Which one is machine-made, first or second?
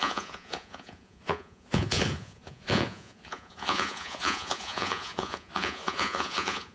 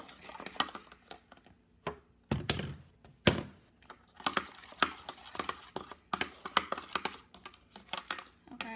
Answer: first